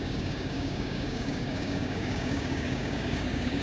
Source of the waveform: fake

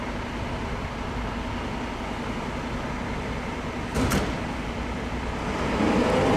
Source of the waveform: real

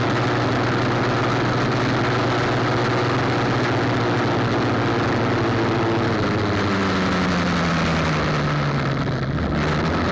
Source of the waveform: real